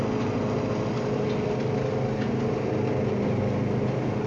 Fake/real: real